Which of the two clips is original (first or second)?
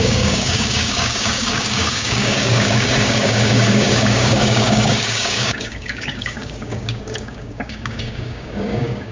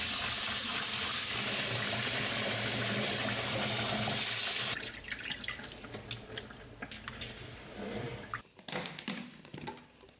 second